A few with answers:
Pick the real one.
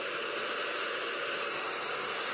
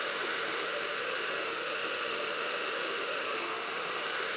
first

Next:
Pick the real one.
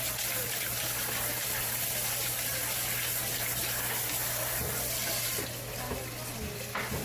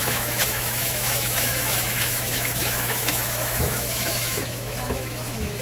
first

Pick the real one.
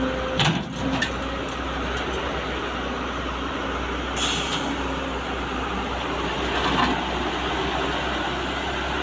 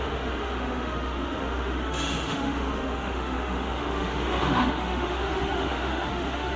first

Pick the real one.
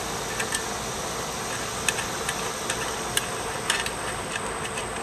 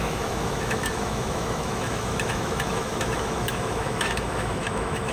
first